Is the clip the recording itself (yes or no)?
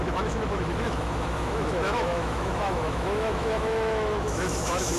no